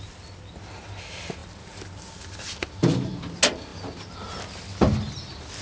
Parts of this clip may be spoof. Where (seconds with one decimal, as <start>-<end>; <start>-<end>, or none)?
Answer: none